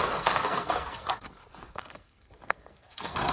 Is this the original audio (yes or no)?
no